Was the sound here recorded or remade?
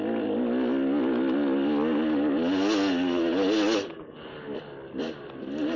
recorded